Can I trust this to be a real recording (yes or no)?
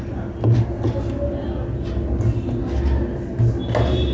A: yes